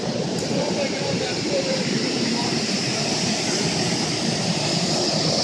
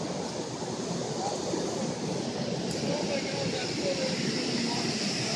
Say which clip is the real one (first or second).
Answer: second